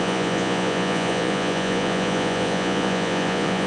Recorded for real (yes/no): no